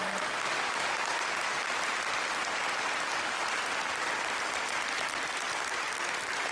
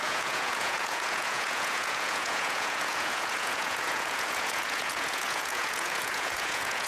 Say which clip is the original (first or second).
first